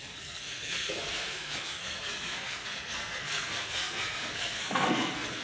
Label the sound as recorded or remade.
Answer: remade